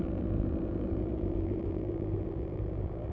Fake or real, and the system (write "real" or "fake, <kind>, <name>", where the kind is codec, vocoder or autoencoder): fake, vocoder, BigVGAN v2